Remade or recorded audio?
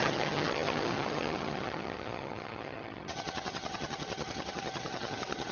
remade